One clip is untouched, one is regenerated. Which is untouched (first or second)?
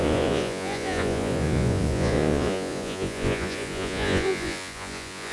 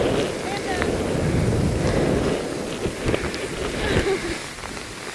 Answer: second